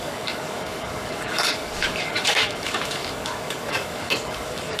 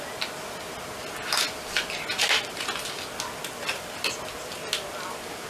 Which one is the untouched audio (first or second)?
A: second